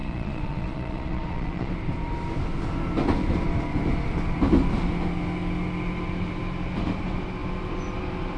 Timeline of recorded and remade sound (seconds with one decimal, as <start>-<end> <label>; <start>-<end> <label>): 0.0-1.7 remade; 1.7-8.4 recorded